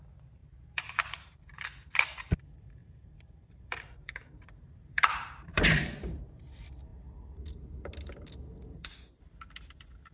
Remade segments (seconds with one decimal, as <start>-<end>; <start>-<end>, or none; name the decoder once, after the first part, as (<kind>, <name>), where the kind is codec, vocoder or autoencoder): 0.4-1.4 (vocoder, BigVGAN v2); 2.8-6.4